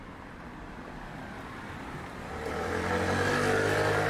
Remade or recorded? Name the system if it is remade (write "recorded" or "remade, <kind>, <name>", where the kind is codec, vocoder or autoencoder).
recorded